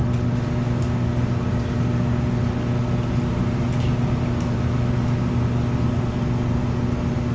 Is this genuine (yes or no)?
yes